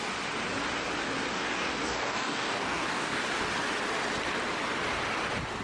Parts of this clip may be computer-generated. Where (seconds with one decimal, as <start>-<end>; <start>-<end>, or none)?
1.3-3.2